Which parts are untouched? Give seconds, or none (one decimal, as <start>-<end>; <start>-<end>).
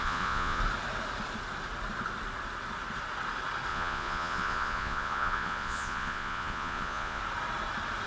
0.6-3.7; 7.2-8.1